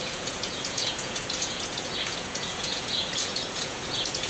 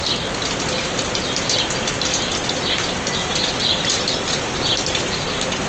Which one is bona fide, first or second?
second